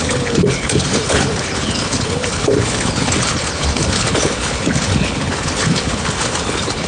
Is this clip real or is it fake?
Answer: fake